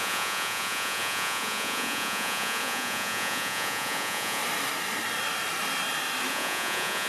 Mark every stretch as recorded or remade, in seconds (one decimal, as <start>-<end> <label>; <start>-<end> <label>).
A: 0.0-4.4 remade; 4.4-6.3 recorded; 6.3-7.1 remade